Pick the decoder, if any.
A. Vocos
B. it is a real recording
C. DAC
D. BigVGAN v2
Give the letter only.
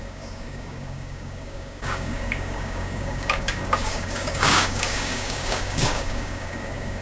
C